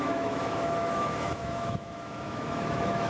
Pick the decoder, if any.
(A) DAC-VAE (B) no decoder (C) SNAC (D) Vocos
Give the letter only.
A